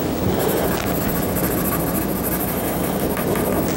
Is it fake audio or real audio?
real